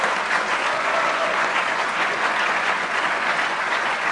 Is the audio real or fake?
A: fake